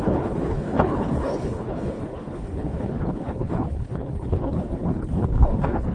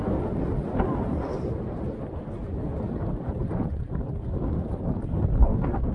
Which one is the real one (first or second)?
second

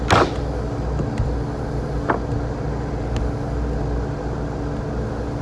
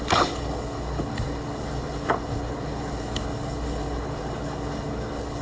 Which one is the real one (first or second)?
first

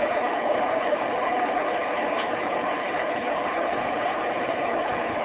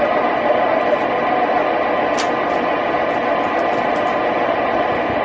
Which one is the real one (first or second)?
second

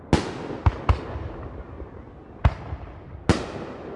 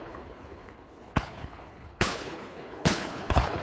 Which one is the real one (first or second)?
first